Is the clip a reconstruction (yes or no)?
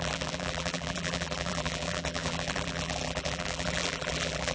yes